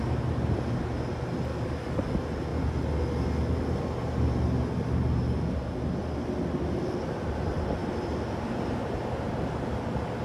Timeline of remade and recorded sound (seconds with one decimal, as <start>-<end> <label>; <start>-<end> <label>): 0.0-1.5 recorded; 1.5-2.1 remade; 2.1-10.2 recorded